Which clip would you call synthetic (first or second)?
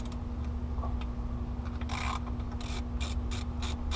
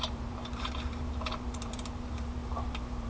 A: second